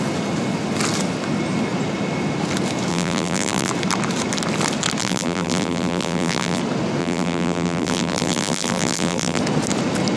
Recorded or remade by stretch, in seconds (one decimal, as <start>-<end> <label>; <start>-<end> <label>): 0.0-2.9 recorded; 2.9-3.7 remade; 3.7-5.0 recorded; 5.0-6.6 remade; 6.6-7.0 recorded; 7.0-9.4 remade; 9.4-10.2 recorded